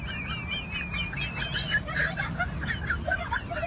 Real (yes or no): yes